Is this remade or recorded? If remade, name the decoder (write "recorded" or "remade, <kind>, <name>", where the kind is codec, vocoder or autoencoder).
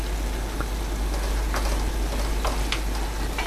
recorded